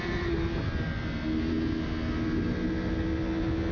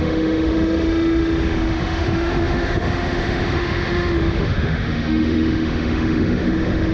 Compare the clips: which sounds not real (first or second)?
second